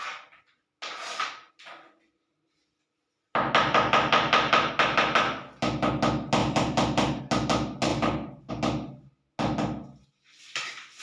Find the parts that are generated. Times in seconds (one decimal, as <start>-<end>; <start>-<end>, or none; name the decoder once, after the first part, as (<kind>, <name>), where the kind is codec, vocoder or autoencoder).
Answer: 3.6-4.7 (vocoder, BigVGAN v2); 6.4-7.2; 7.9-8.5